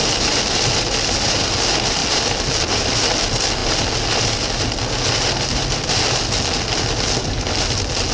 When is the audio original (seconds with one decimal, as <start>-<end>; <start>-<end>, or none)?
0.0-8.1